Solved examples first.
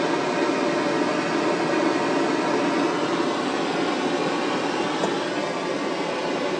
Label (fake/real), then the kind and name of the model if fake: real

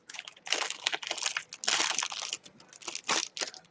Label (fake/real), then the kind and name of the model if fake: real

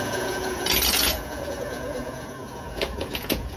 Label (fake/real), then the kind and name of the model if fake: fake, vocoder, Vocos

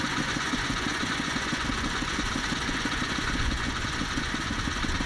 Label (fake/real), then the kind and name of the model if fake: fake, vocoder, Vocos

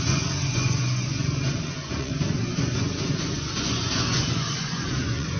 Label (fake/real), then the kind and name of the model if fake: fake, vocoder, Vocos